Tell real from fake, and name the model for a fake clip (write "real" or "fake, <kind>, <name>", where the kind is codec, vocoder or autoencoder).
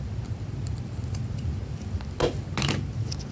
real